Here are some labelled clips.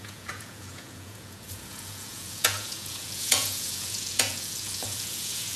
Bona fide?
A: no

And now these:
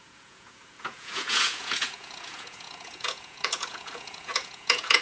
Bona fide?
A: no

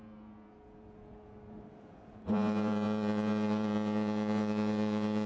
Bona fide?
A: no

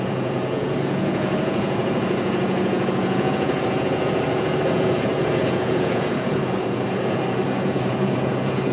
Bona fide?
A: no